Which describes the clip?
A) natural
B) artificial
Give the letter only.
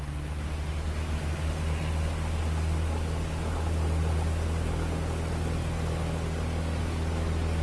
A